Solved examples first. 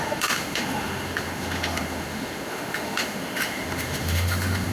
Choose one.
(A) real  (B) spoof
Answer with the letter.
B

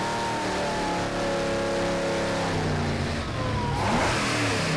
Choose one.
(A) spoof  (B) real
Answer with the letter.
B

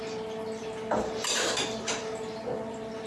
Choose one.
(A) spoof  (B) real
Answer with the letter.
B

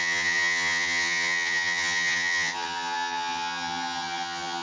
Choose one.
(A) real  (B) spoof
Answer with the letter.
B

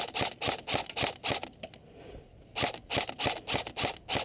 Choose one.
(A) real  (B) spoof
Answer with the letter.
A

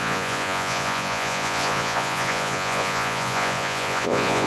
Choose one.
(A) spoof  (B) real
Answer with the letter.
A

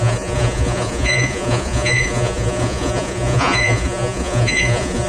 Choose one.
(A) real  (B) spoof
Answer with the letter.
B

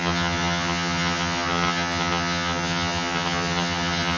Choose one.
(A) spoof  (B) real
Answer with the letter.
A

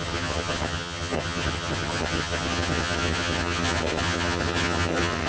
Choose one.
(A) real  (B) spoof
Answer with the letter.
B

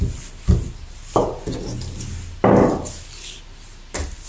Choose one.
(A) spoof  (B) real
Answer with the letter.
B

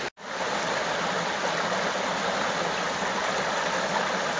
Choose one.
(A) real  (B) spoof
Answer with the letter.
A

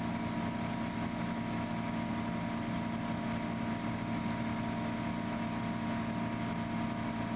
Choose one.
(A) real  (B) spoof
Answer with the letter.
A